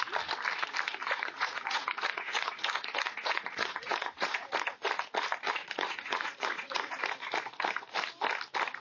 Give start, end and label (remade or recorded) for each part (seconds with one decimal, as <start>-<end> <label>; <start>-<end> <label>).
0.0-1.0 recorded; 1.0-4.6 remade; 4.6-5.6 recorded; 5.6-7.0 remade; 7.0-8.8 recorded